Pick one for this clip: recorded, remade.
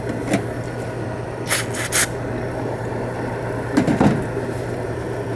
recorded